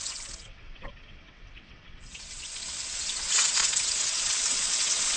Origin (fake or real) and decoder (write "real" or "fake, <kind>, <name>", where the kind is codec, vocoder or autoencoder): fake, vocoder, WaveNeXt